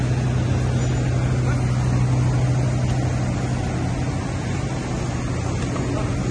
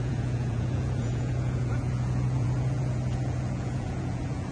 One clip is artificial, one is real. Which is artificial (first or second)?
second